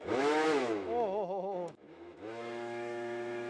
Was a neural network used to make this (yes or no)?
yes